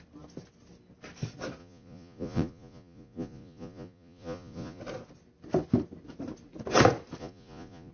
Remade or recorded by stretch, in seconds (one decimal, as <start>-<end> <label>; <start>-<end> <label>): 0.0-1.6 recorded; 1.6-4.8 remade; 4.8-7.2 recorded; 7.2-7.9 remade